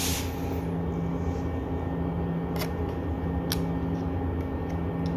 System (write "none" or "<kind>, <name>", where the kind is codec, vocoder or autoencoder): none